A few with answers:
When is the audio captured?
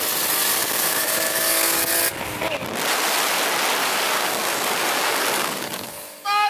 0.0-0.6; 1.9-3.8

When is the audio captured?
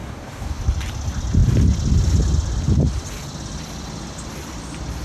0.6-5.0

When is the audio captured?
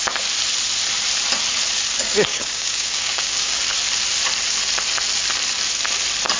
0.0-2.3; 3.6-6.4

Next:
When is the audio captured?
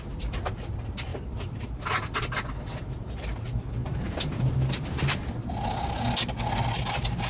0.0-7.3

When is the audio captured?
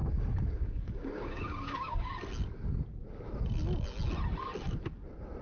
2.1-5.4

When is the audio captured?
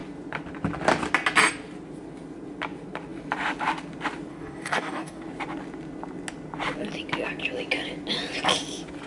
0.0-4.3; 5.2-9.1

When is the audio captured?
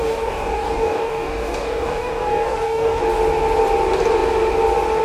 3.0-5.0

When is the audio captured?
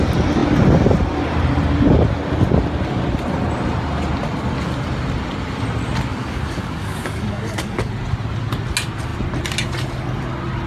0.0-6.1; 7.9-10.7